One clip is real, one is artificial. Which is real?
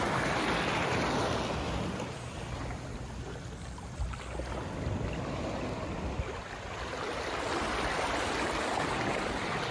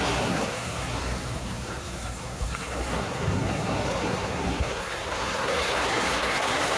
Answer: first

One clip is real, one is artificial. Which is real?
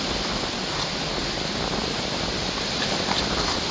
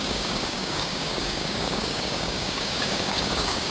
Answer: first